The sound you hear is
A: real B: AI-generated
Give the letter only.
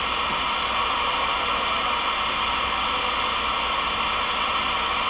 A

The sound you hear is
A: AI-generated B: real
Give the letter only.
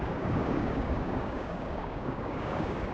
A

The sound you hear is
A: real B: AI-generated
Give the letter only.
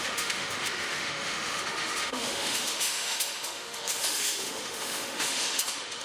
B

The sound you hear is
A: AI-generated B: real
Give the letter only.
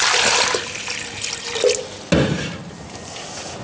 B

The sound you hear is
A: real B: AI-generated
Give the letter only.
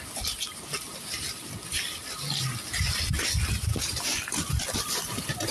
A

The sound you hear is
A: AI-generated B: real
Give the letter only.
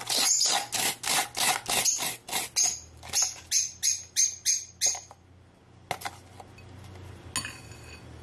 B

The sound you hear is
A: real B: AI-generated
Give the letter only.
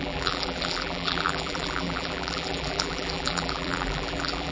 B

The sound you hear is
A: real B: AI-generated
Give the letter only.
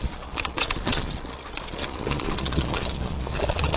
B